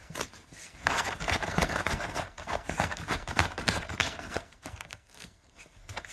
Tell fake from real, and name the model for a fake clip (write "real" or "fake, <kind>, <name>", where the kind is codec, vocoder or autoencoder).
fake, codec, SNAC